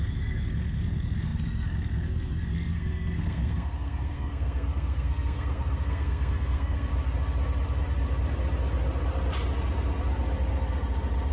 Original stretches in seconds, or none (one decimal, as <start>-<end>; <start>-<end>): 6.9-11.3